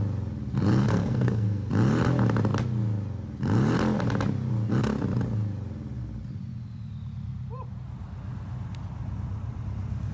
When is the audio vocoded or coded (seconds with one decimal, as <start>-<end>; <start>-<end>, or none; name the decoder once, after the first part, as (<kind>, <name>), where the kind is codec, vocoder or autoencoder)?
0.8-1.7 (codec, SNAC)